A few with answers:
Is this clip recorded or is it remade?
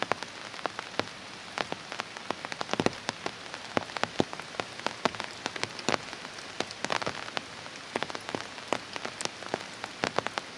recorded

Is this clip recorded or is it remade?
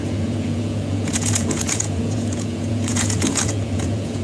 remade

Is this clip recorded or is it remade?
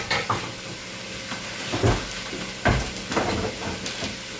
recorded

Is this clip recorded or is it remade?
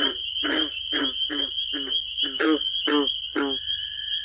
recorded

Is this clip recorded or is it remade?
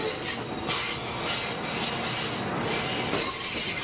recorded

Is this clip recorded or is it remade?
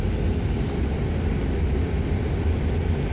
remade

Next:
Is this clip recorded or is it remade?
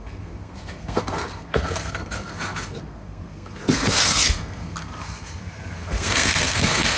remade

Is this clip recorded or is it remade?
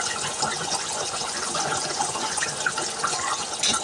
remade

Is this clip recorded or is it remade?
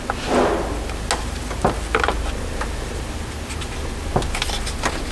recorded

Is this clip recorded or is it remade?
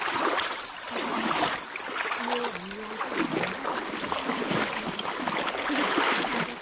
recorded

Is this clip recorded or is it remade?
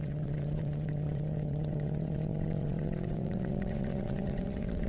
remade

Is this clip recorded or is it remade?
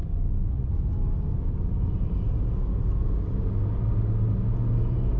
recorded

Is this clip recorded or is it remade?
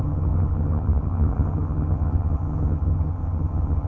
remade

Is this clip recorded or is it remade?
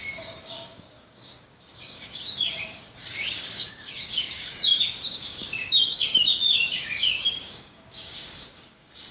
remade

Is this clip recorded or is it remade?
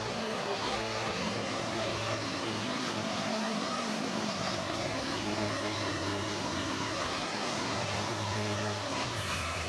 remade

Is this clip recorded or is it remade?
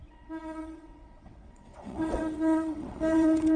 remade